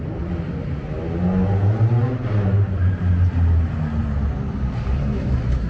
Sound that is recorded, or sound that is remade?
recorded